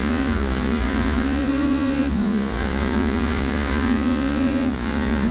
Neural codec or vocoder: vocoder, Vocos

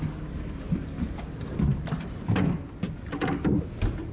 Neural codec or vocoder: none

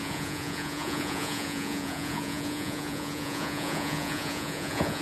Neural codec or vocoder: vocoder, Vocos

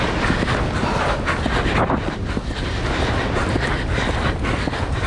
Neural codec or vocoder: none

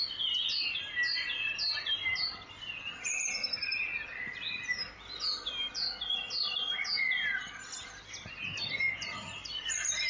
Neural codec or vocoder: none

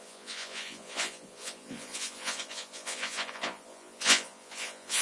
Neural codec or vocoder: vocoder, Vocos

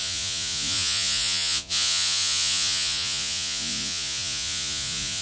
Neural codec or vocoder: vocoder, Vocos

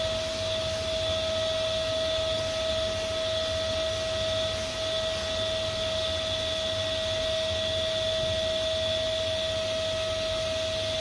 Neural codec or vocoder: none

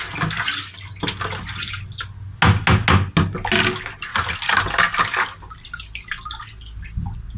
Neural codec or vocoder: none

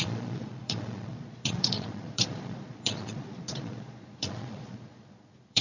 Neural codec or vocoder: vocoder, Vocos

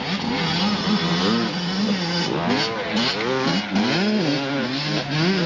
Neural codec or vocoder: none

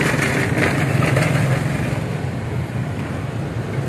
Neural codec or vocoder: none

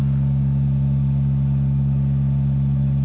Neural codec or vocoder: none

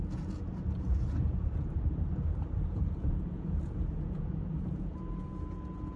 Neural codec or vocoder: vocoder, Vocos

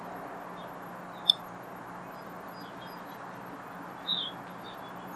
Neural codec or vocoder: none